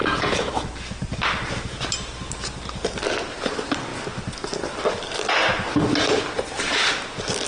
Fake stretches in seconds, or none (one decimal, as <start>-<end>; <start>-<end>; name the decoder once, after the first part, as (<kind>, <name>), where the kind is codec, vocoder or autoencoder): 0.0-0.5 (vocoder, Vocos)